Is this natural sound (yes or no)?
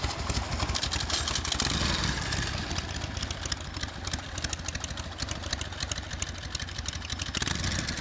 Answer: yes